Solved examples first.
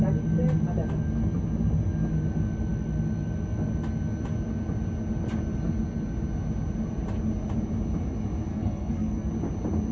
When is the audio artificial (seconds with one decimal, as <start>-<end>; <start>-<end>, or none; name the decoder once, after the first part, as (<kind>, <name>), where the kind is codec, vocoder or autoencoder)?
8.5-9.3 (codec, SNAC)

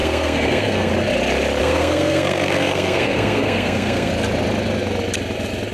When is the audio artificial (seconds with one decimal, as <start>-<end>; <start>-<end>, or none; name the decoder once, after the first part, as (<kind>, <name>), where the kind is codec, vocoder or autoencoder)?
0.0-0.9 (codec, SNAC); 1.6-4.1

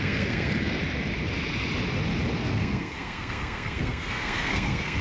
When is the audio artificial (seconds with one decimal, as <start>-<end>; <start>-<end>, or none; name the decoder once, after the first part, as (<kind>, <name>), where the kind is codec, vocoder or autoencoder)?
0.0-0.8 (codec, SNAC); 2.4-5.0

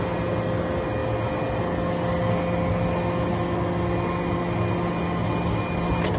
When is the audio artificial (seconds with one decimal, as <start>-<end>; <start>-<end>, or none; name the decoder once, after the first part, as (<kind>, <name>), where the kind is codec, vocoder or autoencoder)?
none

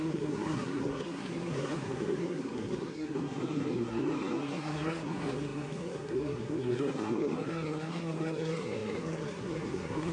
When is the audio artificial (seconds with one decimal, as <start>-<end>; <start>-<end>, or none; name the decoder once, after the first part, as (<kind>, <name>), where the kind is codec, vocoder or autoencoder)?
0.0-10.1 (codec, SNAC)